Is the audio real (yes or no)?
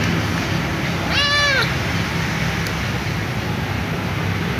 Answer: yes